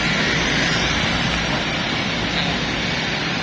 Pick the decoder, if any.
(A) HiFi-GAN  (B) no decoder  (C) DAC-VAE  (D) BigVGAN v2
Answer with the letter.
B